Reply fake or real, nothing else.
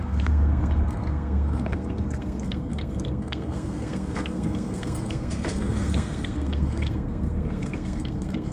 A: fake